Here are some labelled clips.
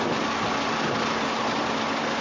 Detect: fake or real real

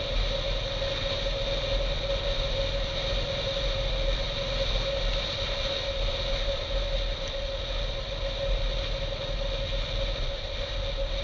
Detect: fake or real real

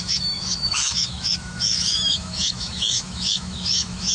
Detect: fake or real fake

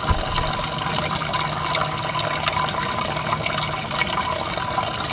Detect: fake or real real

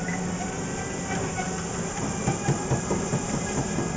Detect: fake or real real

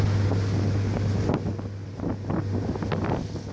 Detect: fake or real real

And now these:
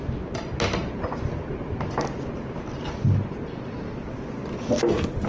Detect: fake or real real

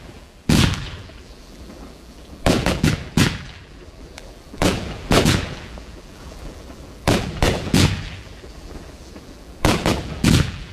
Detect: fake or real fake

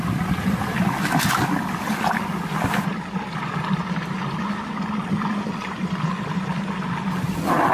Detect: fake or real real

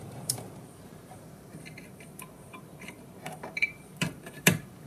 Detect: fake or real fake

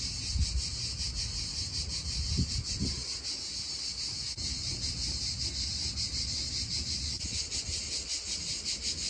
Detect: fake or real real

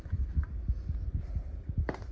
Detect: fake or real fake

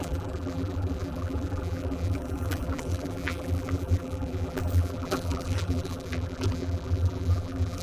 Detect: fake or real fake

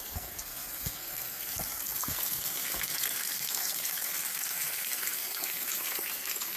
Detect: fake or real fake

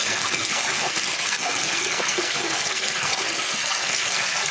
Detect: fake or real fake